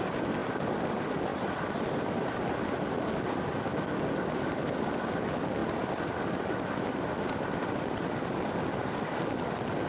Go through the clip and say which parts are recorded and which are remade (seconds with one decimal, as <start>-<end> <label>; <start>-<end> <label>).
0.0-9.9 recorded